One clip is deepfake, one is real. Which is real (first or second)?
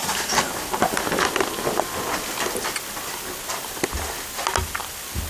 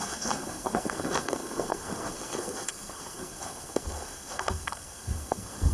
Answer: first